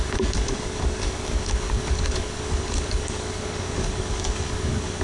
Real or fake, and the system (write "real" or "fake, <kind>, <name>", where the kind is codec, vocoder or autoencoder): fake, codec, DAC